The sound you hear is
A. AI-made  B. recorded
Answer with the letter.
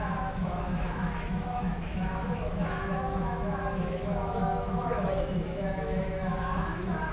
A